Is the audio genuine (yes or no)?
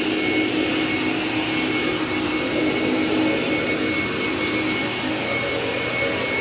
yes